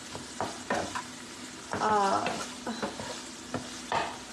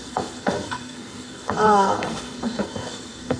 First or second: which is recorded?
first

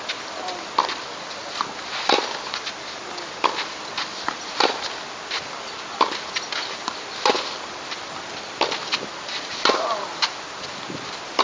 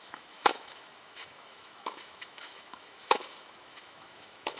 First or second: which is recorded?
first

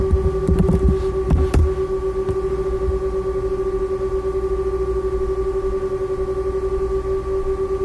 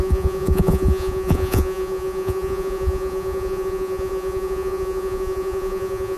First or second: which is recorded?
first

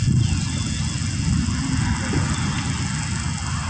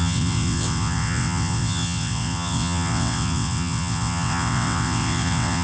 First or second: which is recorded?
first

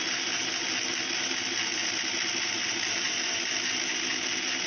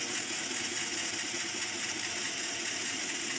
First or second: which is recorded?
first